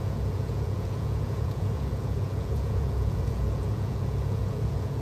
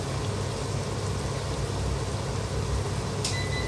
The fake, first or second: first